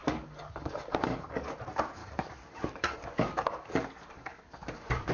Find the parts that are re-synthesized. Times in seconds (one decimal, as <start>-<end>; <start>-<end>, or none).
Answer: 0.0-1.5; 2.0-5.1